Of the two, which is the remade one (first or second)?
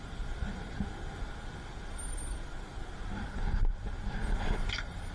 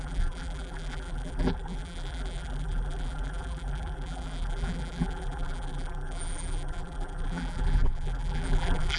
second